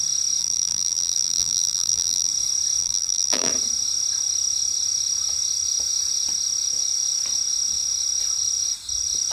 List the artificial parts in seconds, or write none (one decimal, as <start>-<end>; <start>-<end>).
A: 0.4-2.3; 2.8-3.5